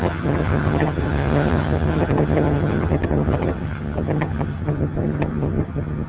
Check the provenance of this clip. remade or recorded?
remade